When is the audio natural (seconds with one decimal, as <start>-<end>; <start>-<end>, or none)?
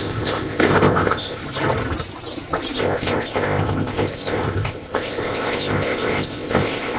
1.4-2.8